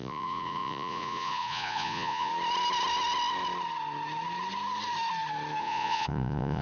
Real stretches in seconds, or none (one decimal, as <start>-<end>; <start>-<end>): 2.3-5.6